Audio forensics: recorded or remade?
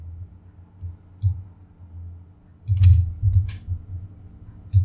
recorded